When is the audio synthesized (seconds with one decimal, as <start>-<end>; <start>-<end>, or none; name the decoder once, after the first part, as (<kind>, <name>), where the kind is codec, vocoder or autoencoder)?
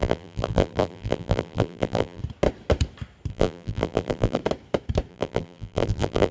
0.0-2.2 (vocoder, BigVGAN v2); 3.3-4.4; 5.1-6.3